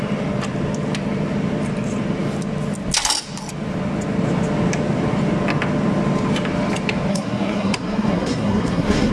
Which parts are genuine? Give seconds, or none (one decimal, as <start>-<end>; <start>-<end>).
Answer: 0.0-7.1